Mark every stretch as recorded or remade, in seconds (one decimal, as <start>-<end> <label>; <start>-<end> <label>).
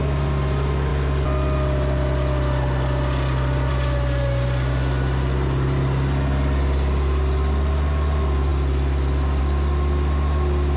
0.0-10.8 recorded